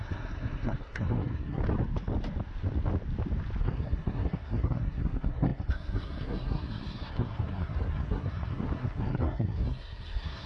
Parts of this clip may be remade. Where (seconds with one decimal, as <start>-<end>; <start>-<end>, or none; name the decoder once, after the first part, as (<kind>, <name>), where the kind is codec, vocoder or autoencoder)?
0.0-1.6 (codec, SNAC); 3.6-10.5